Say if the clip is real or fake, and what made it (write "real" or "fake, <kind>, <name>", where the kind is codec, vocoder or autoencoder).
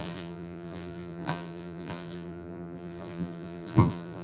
fake, vocoder, BigVGAN v2